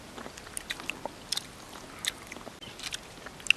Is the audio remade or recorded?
recorded